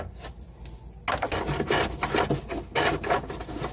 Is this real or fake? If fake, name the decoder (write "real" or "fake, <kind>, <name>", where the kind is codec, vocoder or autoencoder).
real